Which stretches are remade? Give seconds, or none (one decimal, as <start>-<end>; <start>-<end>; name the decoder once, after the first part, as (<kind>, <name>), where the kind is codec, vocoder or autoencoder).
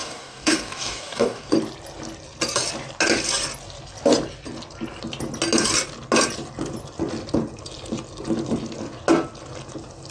0.0-1.5 (codec, DAC)